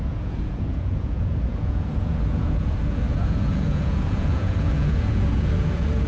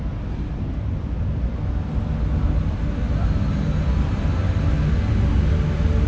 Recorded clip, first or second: second